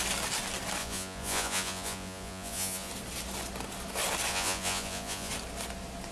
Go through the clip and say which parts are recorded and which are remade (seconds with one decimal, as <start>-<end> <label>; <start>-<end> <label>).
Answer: 0.0-0.8 recorded; 0.8-2.9 remade; 2.9-4.3 recorded; 4.3-5.3 remade; 5.3-6.1 recorded